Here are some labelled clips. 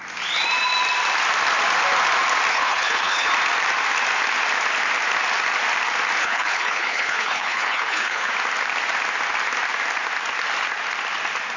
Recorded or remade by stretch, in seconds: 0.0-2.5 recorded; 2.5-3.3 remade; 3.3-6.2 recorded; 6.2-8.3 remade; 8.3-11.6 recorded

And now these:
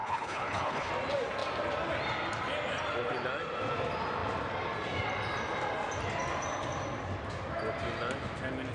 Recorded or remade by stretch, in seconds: 0.0-0.9 remade; 0.9-8.7 recorded

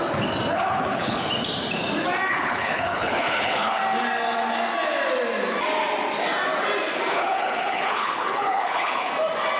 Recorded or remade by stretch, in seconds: 0.0-0.5 recorded; 0.5-1.2 remade; 1.2-2.3 recorded; 2.3-3.8 remade; 3.8-7.1 recorded; 7.1-9.1 remade; 9.1-9.6 recorded

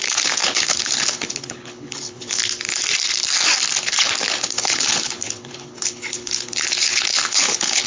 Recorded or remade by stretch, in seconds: 0.0-2.4 remade; 2.4-4.3 recorded; 4.3-7.9 remade

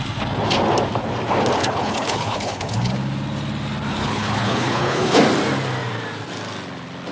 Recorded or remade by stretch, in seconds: 0.0-1.6 recorded; 1.6-2.9 remade; 2.9-3.9 recorded; 3.9-5.2 remade; 5.2-7.1 recorded

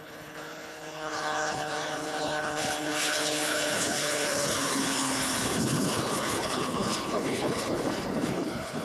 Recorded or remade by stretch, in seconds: 0.0-8.8 remade